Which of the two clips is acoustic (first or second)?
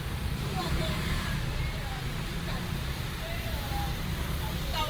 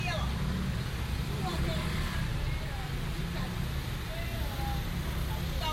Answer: second